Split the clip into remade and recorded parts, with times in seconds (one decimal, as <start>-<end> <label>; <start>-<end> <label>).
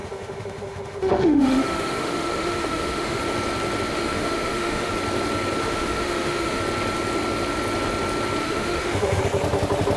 0.0-3.2 remade; 3.2-3.9 recorded; 3.9-4.9 remade; 4.9-5.6 recorded; 5.6-6.6 remade; 6.6-8.4 recorded; 8.4-9.2 remade; 9.2-10.0 recorded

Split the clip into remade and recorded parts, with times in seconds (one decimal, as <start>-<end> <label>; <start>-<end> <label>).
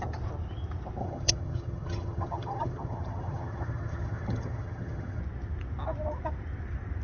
0.0-1.0 recorded; 1.0-5.2 remade; 5.2-7.0 recorded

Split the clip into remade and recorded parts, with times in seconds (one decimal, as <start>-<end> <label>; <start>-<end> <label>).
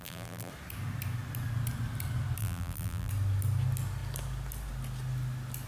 0.0-0.5 remade; 0.5-2.4 recorded; 2.4-3.1 remade; 3.1-5.7 recorded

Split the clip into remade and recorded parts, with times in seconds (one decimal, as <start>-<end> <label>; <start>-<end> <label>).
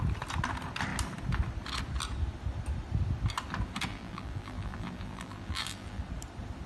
0.0-3.9 recorded; 3.9-6.0 remade; 6.0-6.7 recorded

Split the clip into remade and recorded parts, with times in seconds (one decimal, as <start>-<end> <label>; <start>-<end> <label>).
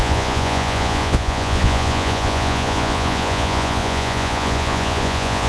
0.0-5.5 remade